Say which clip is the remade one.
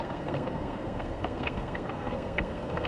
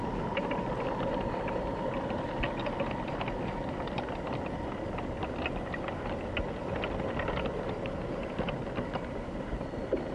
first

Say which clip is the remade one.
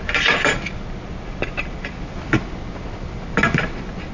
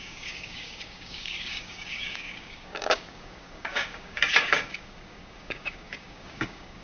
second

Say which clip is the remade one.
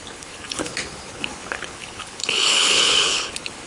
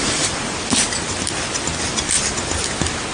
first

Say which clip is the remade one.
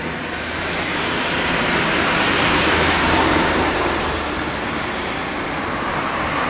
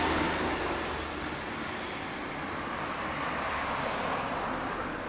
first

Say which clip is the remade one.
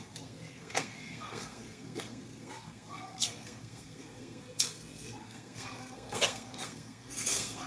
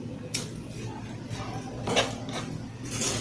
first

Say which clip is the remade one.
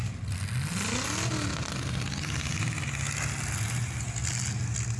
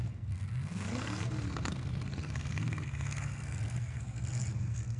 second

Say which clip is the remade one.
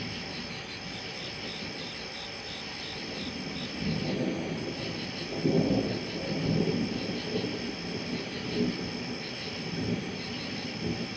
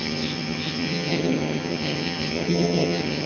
second